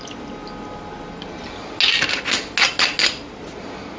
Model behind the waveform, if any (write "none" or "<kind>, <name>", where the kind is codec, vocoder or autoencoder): none